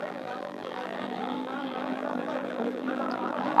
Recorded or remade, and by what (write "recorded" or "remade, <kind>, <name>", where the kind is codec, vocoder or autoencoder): remade, vocoder, BigVGAN v2